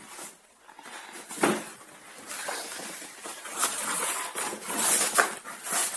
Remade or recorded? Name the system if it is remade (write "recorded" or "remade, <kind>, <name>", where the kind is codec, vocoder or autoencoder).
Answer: recorded